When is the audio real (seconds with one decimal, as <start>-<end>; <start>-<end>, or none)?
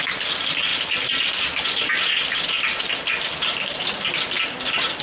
0.0-5.0